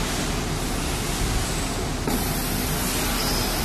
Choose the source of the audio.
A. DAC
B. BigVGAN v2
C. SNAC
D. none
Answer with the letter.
D